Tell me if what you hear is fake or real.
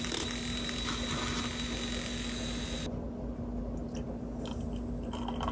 real